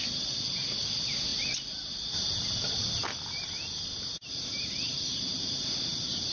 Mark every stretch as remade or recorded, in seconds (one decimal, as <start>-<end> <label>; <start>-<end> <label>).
0.0-6.3 recorded